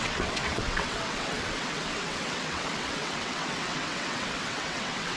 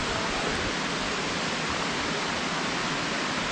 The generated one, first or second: first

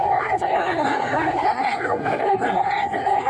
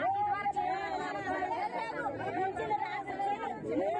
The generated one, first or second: first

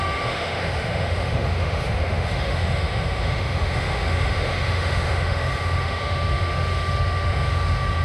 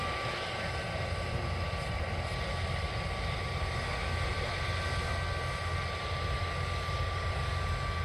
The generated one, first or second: first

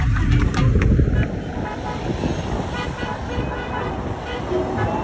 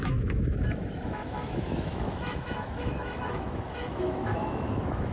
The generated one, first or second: second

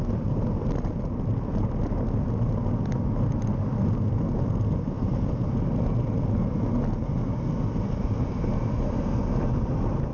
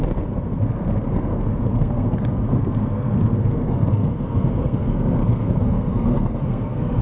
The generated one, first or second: second